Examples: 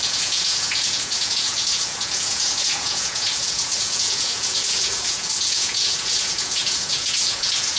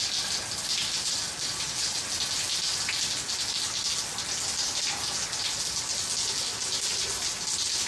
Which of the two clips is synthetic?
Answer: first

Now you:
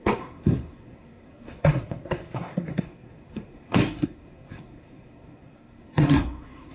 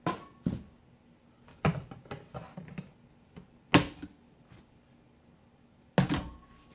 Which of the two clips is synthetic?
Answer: first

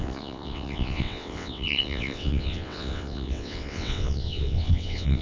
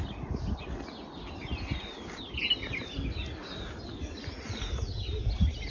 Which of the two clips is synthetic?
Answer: first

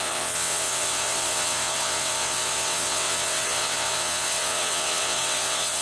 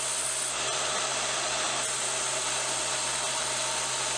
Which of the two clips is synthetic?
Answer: first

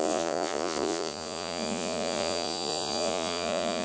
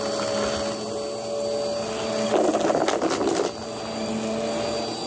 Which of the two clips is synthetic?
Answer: first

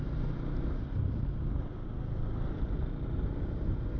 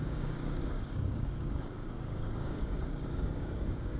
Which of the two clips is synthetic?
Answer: second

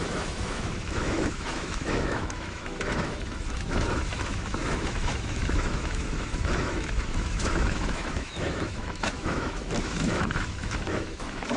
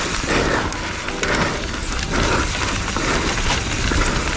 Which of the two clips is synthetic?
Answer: first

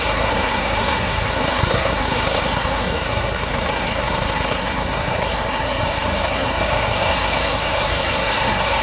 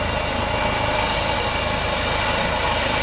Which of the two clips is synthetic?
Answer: first